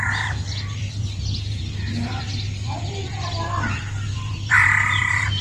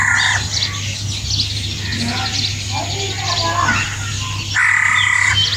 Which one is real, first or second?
second